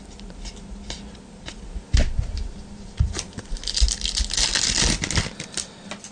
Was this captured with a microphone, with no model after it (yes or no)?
yes